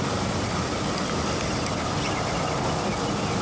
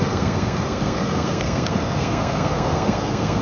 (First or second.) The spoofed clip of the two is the second